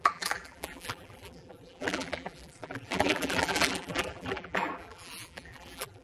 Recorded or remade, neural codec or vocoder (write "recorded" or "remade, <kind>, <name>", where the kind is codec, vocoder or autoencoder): remade, vocoder, BigVGAN v2